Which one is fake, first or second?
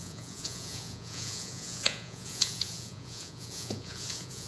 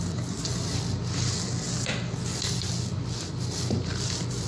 first